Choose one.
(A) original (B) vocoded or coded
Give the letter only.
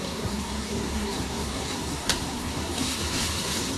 B